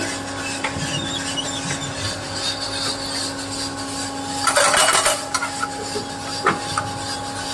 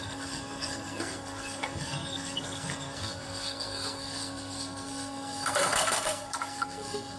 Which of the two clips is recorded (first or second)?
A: first